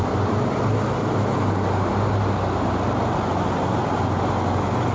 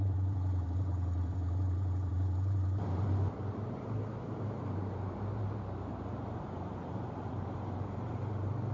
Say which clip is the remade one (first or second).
second